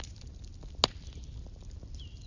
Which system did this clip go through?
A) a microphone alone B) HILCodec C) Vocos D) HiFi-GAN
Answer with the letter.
A